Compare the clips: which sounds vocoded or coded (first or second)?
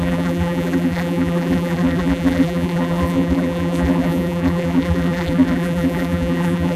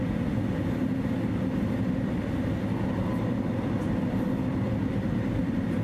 first